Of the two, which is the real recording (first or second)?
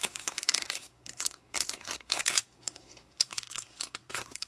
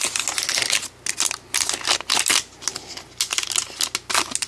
second